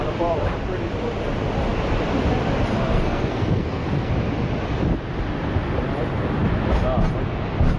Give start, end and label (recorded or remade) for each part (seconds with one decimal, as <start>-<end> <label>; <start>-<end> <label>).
0.0-2.8 recorded; 2.8-4.1 remade; 4.1-7.8 recorded